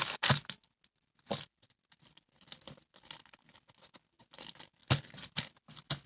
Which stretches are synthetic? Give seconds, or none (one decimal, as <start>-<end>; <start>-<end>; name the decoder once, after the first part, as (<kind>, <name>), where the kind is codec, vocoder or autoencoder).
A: none